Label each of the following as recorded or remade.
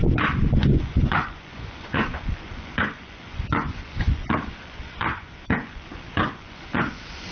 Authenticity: remade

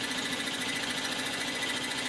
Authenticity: remade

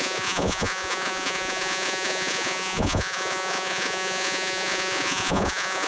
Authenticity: remade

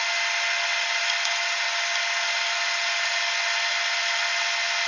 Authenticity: recorded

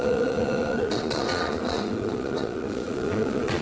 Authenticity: remade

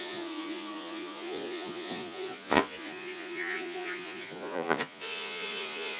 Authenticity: remade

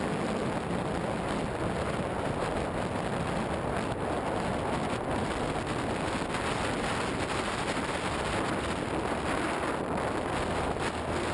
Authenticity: recorded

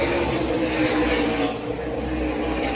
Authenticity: recorded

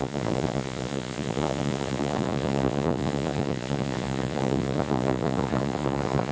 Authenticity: remade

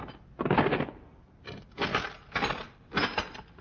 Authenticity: recorded